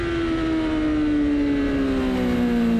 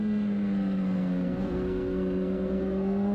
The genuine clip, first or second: first